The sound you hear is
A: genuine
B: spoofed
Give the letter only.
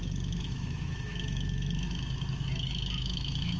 B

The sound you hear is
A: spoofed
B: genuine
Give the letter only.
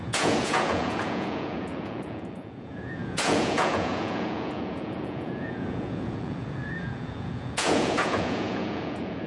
A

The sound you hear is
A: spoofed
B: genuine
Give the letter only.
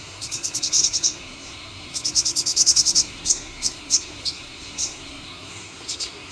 A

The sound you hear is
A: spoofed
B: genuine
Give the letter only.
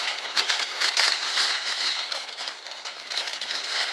A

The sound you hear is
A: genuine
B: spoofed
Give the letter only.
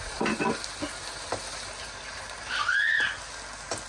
A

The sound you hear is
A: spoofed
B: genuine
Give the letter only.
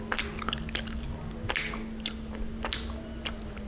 B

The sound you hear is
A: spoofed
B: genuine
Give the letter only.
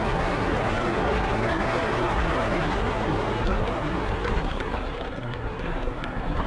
A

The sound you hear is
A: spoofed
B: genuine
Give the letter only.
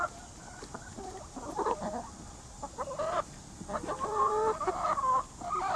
A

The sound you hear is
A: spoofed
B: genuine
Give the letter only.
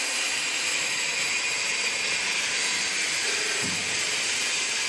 B